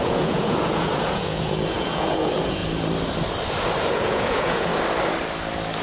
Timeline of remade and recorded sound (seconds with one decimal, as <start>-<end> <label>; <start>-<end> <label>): 0.0-2.6 remade; 2.6-3.9 recorded; 3.9-4.7 remade; 4.7-5.8 recorded